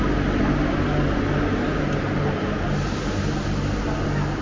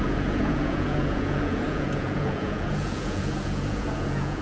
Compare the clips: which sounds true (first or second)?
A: first